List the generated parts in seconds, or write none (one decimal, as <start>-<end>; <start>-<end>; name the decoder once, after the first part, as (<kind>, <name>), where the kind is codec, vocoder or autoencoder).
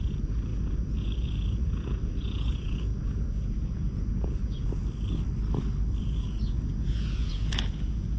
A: 0.0-4.8 (vocoder, Vocos); 6.0-8.2